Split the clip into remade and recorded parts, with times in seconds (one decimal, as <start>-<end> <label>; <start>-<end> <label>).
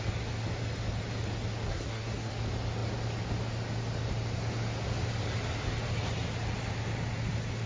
0.0-1.7 recorded; 1.7-2.3 remade; 2.3-7.7 recorded